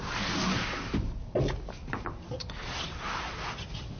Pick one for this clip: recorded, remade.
recorded